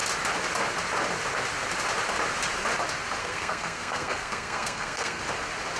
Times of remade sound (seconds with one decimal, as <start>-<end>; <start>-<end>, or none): 3.2-5.2